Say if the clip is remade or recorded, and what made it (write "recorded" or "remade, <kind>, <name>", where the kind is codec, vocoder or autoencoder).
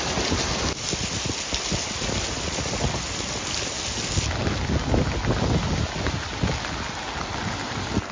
recorded